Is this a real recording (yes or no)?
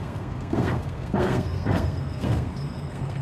no